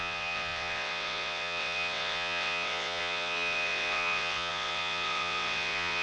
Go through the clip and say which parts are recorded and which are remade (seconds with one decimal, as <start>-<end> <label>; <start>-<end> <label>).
0.0-6.0 remade